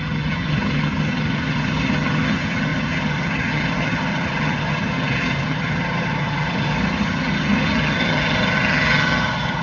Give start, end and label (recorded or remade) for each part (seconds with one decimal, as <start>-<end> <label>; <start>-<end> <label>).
0.0-9.6 remade